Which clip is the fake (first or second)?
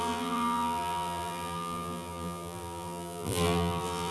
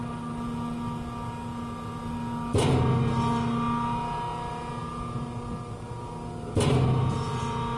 first